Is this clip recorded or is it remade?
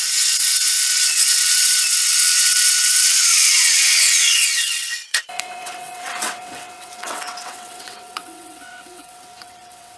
remade